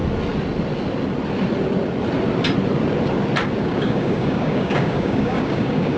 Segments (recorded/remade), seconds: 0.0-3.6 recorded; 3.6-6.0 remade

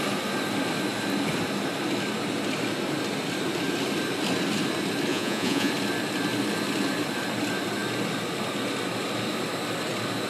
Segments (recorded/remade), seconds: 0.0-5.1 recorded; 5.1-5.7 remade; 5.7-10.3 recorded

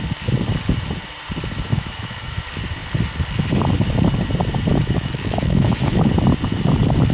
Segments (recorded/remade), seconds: 0.0-1.7 recorded; 1.7-2.4 remade; 2.4-4.7 recorded; 4.7-6.1 remade; 6.1-7.1 recorded

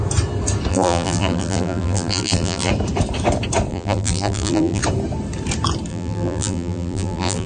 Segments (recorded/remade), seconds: 0.0-0.7 recorded; 0.7-2.7 remade; 2.7-3.7 recorded; 3.7-4.8 remade; 4.8-5.9 recorded; 5.9-7.5 remade

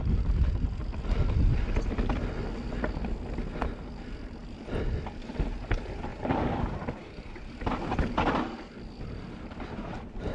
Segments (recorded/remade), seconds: 0.0-0.8 recorded; 0.8-1.6 remade; 1.6-4.4 recorded; 4.4-5.3 remade; 5.3-6.1 recorded; 6.1-10.3 remade

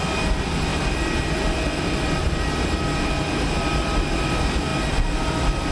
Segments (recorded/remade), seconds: 0.0-5.7 recorded

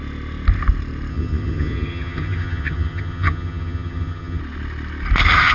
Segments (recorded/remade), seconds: 0.0-1.1 recorded; 1.1-4.4 remade; 4.4-5.5 recorded

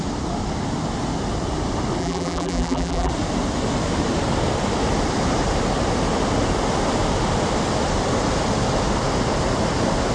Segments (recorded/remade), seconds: 0.0-2.0 recorded; 2.0-3.1 remade; 3.1-10.1 recorded